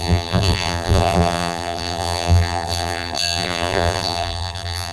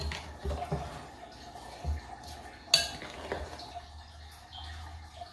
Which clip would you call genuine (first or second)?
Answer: second